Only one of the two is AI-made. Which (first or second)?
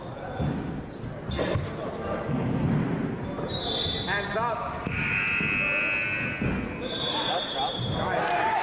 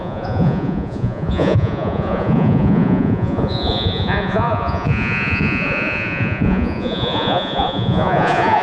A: second